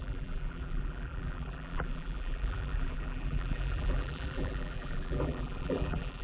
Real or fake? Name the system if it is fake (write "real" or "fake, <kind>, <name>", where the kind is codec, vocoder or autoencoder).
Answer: fake, vocoder, BigVGAN v2